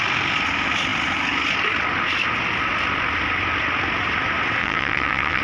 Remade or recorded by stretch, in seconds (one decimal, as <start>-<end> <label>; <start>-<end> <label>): 0.0-4.6 recorded; 4.6-5.4 remade